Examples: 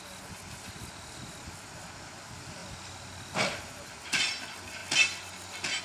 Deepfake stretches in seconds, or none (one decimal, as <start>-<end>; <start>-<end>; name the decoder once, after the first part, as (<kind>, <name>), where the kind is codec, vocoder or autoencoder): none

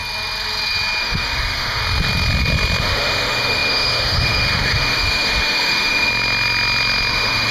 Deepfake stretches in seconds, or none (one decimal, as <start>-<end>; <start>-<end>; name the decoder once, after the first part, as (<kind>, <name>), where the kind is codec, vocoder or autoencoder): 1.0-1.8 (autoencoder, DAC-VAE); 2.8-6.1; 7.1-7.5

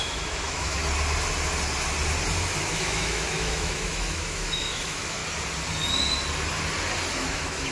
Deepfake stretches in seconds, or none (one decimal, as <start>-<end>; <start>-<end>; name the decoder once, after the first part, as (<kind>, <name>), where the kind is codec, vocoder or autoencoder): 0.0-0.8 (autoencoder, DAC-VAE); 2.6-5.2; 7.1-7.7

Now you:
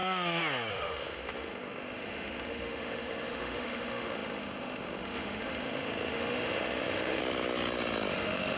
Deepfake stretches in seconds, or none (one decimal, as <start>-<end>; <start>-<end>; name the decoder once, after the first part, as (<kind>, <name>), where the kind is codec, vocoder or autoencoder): 0.7-7.2 (autoencoder, DAC-VAE); 8.1-8.6

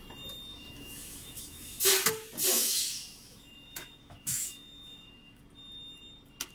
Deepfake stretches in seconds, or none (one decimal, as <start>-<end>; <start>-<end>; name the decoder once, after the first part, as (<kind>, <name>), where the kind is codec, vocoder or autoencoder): 0.5-1.8 (autoencoder, DAC-VAE); 2.5-5.4

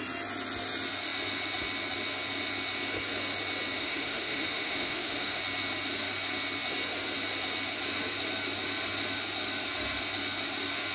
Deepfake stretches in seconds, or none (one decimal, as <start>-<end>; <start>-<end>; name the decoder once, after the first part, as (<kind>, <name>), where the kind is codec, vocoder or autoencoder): 3.8-5.4 (autoencoder, DAC-VAE)

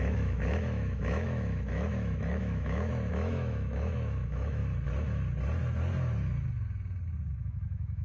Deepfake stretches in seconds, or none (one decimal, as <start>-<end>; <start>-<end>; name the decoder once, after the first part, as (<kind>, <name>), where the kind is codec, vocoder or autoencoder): 0.0-4.6 (autoencoder, DAC-VAE); 7.3-8.0

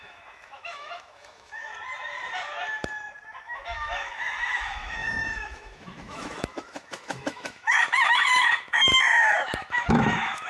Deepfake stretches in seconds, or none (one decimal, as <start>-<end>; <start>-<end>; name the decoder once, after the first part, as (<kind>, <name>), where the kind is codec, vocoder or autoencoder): 0.0-1.7 (autoencoder, DAC-VAE); 3.4-10.5